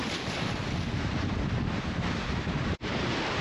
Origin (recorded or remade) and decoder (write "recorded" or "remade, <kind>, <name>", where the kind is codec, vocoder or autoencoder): recorded